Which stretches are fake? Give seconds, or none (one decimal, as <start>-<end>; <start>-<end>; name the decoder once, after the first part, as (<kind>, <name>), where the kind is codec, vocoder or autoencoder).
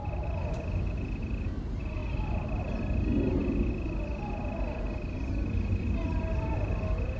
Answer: none